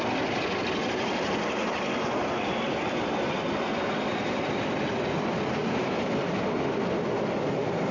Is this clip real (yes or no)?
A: yes